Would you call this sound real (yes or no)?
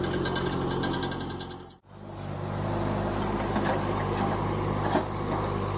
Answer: yes